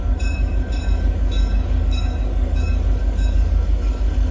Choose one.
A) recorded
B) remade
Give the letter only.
B